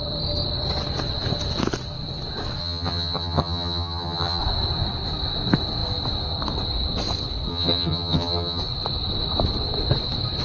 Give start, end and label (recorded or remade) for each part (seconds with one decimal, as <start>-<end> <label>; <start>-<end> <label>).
0.0-2.6 recorded; 2.6-4.4 remade; 4.4-7.5 recorded; 7.5-8.6 remade; 8.6-10.4 recorded